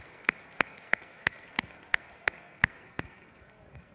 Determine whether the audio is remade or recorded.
remade